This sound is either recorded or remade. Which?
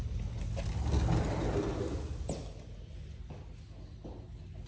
recorded